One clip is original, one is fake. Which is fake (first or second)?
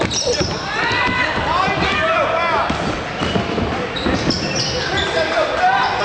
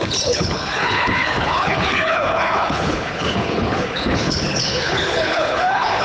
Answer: second